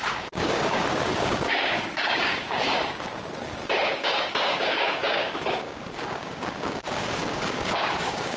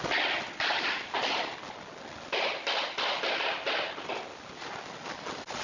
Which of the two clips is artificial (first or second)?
first